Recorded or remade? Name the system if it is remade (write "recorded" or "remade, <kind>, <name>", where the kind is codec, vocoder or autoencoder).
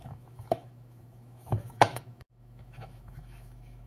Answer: remade, autoencoder, DAC-VAE